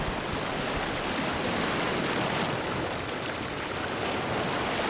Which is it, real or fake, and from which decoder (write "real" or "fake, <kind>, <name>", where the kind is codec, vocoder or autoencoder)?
real